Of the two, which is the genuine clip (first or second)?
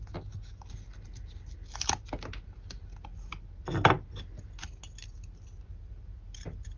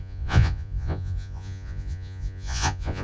first